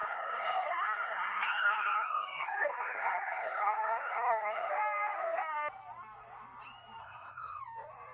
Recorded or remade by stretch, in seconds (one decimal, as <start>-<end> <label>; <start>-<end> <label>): 0.0-4.7 remade; 4.7-7.0 recorded; 7.0-7.6 remade; 7.6-8.1 recorded

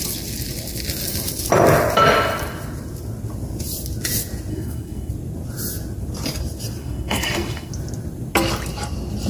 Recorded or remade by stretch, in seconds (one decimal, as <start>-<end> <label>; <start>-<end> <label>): 0.0-4.5 recorded; 4.5-5.1 remade; 5.1-6.8 recorded; 6.8-7.7 remade; 7.7-9.3 recorded

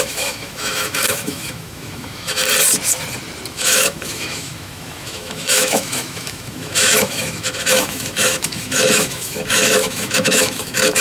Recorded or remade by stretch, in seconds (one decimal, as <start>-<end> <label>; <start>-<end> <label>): 0.0-2.4 remade; 2.4-3.5 recorded; 3.5-11.0 remade

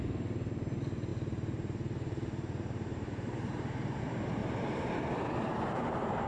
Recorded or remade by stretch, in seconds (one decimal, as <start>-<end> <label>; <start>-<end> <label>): 0.0-1.1 recorded; 1.1-4.0 remade; 4.0-5.5 recorded; 5.5-6.3 remade

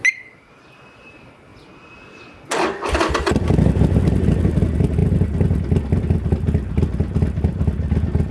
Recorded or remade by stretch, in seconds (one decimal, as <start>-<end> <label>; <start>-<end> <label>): 0.0-8.3 recorded

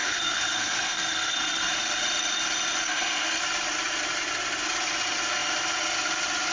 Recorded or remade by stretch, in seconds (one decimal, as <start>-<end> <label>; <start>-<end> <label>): 0.0-1.7 remade; 1.7-2.8 recorded; 2.8-3.4 remade; 3.4-6.5 recorded